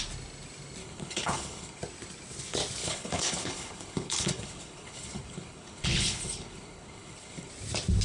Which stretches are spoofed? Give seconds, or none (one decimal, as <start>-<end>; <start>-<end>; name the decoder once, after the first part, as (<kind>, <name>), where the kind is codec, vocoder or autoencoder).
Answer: 0.8-1.8 (codec, HILCodec); 2.8-7.5